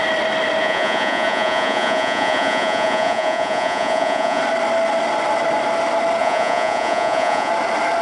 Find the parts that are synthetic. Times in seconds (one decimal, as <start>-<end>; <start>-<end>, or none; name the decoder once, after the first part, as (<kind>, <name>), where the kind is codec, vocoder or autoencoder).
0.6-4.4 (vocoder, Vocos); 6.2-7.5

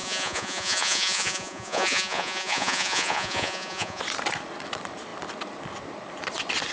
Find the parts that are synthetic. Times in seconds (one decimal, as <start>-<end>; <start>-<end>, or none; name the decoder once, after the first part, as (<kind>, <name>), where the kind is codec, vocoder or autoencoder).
0.0-4.0 (vocoder, Vocos)

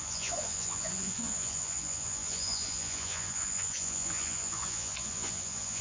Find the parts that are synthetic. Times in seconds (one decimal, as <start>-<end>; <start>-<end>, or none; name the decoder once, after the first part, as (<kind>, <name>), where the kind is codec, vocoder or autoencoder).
0.0-5.8 (vocoder, Vocos)